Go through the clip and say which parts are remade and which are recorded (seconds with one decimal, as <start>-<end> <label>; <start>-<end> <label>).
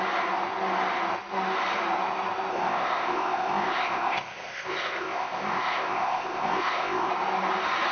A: 0.0-2.5 recorded; 2.5-7.1 remade; 7.1-7.9 recorded